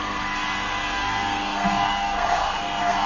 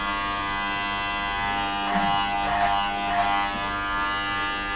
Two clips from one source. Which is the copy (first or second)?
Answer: first